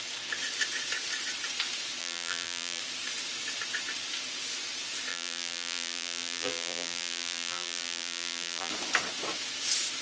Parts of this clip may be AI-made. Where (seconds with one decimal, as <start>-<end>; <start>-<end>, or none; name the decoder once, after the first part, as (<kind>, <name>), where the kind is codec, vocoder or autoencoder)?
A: 2.0-2.8 (vocoder, BigVGAN v2); 5.1-8.7